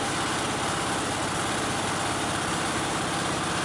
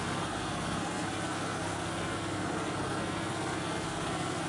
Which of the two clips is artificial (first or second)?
second